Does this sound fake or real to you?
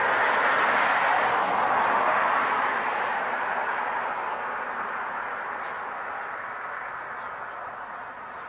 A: real